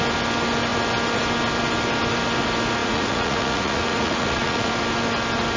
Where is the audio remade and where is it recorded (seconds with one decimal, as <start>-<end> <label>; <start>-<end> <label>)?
0.0-2.8 recorded; 2.8-4.7 remade; 4.7-5.6 recorded